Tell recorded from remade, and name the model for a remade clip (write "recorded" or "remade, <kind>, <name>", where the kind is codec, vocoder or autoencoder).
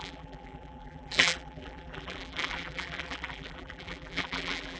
remade, vocoder, BigVGAN v2